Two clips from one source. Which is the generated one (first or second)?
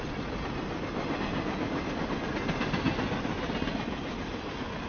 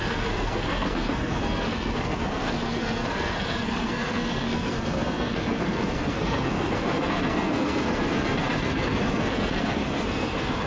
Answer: second